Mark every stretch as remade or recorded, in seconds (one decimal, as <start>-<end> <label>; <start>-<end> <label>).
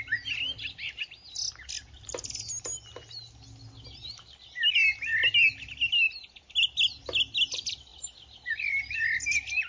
0.0-9.7 recorded